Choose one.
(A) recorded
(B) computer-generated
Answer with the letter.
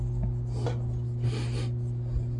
A